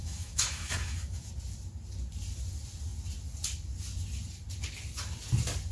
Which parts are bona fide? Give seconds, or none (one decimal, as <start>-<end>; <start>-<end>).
1.3-5.7